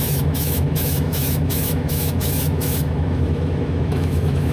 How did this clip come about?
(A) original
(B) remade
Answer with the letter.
B